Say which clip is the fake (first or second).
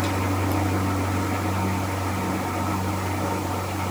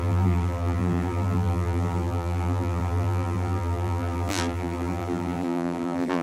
second